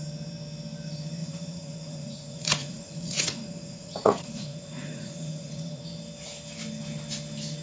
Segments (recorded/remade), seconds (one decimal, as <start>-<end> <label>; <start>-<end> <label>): 0.0-1.2 recorded; 1.2-5.8 remade; 5.8-7.6 recorded